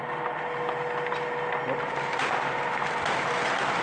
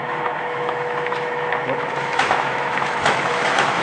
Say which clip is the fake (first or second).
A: second